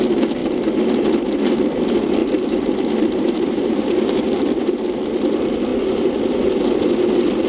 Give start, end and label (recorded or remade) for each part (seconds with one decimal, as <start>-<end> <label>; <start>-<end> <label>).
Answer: 0.0-2.2 recorded; 2.2-4.2 remade; 4.2-7.5 recorded